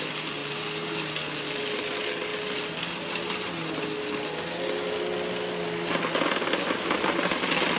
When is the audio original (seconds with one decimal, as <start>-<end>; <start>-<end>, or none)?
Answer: 0.0-7.8